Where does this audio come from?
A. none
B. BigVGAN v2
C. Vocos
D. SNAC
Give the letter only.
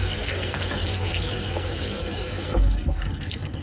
D